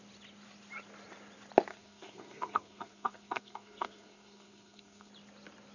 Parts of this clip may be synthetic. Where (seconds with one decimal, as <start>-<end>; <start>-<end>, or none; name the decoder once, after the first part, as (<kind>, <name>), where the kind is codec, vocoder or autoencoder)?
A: 1.7-5.1 (codec, SNAC)